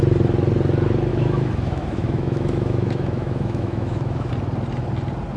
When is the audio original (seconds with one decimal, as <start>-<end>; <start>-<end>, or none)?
0.0-1.1; 4.3-5.4